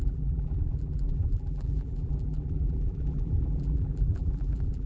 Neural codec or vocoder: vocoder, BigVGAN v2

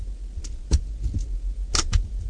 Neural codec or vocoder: none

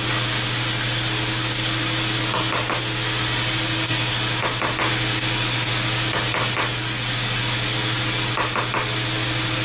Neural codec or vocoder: none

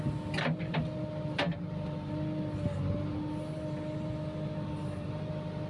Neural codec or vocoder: none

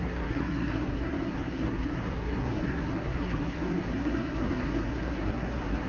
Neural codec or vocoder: codec, SNAC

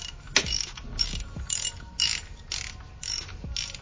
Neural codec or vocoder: none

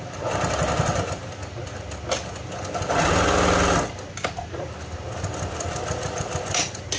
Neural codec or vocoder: none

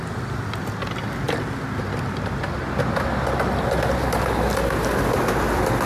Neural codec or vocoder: none